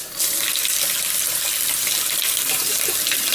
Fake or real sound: real